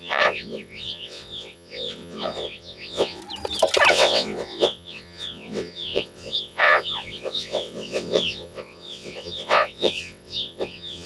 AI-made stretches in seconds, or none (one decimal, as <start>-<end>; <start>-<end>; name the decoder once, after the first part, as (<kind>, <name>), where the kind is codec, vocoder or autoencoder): 0.0-3.2 (vocoder, WaveNeXt); 3.9-11.1